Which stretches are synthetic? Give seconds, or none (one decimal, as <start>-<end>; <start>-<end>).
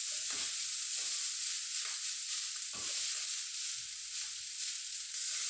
2.4-3.1